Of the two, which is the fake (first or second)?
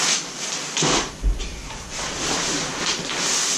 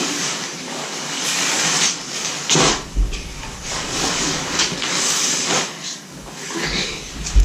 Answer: second